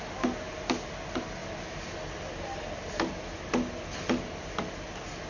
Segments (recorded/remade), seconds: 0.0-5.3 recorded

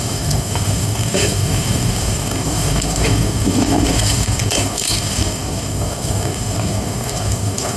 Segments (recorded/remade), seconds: 0.0-7.8 remade